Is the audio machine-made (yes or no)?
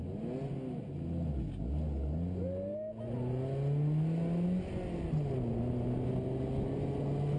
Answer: no